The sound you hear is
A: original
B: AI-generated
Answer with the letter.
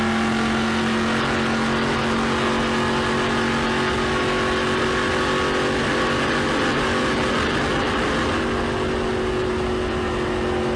A